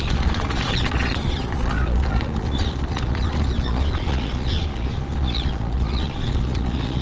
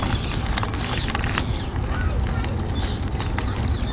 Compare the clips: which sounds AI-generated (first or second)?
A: first